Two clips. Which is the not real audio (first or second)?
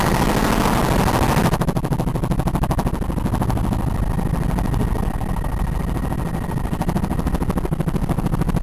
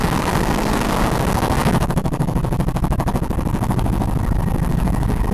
second